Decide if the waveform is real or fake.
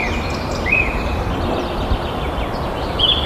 fake